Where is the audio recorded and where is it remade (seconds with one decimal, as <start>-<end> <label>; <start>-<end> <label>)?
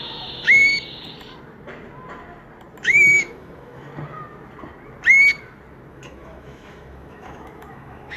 0.0-0.7 remade; 0.7-2.8 recorded; 2.8-3.9 remade; 3.9-5.9 recorded; 5.9-8.2 remade